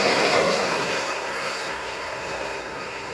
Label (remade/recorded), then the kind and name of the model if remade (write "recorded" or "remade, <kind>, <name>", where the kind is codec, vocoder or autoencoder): remade, codec, SNAC